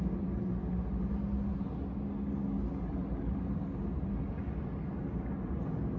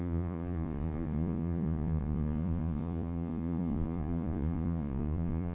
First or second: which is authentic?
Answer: first